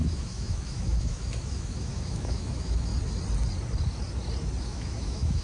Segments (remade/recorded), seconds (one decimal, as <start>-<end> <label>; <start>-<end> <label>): 0.0-2.9 remade; 2.9-4.6 recorded; 4.6-5.4 remade